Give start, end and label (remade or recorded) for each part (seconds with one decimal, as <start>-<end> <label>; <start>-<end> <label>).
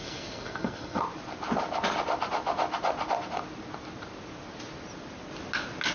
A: 0.0-1.0 remade; 1.0-5.9 recorded